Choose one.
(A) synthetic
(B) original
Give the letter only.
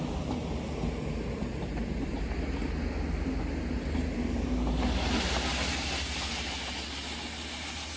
B